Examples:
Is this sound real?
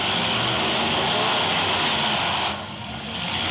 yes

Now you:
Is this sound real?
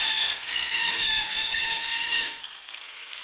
no